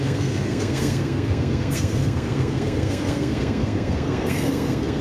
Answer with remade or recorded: remade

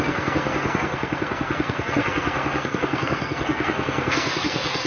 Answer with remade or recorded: remade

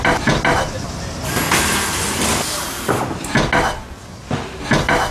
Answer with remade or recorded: recorded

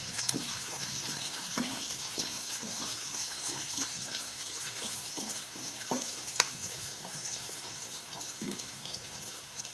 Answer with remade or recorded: remade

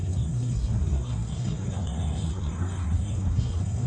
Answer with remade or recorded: remade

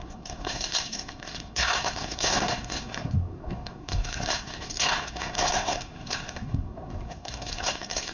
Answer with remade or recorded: remade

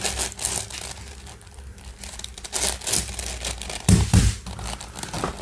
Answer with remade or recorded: recorded